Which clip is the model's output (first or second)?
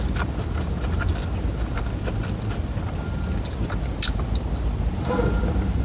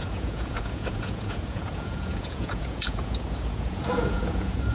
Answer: second